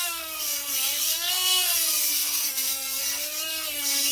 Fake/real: fake